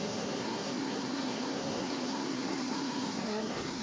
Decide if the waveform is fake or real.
fake